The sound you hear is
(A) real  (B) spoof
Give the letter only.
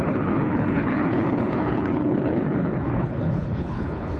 B